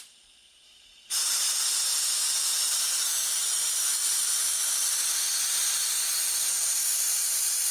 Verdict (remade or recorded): recorded